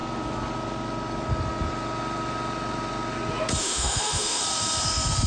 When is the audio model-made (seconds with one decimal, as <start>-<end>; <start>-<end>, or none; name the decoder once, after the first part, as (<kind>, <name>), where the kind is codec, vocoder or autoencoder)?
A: 3.6-4.4 (autoencoder, DAC-VAE)